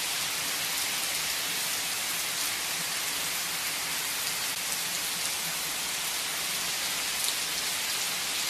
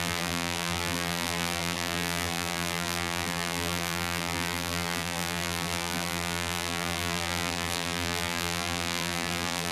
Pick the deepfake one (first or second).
second